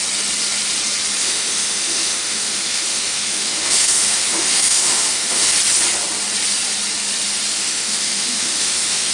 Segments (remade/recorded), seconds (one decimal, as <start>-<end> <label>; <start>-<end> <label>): 0.0-1.2 recorded; 1.2-5.5 remade; 5.5-7.5 recorded; 7.5-9.1 remade